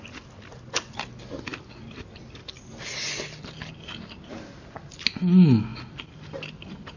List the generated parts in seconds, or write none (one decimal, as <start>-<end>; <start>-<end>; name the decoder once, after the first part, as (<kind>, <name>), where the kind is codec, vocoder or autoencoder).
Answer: none